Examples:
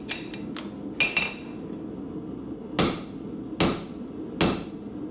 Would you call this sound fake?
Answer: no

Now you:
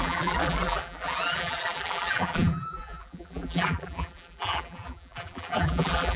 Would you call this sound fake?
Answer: yes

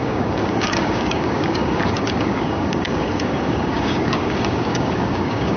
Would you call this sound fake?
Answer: yes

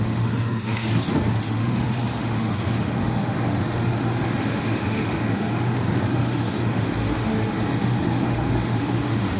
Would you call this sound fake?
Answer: yes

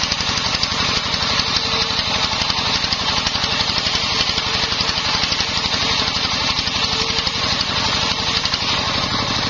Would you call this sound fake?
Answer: no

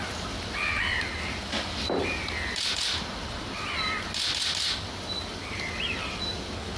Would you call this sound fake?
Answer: no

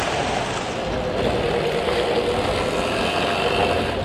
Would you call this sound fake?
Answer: no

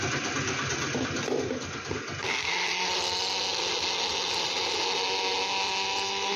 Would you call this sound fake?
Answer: no